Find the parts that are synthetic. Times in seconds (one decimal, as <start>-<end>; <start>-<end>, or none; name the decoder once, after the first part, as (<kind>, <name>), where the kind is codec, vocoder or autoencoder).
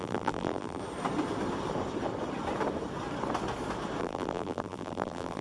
0.0-0.8 (vocoder, BigVGAN v2); 4.0-5.4